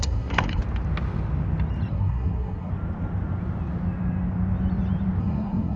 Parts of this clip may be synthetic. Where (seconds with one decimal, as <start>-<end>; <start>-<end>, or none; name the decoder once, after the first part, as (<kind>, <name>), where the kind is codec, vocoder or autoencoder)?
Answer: 0.0-0.6 (codec, SNAC); 1.9-2.7; 5.2-5.8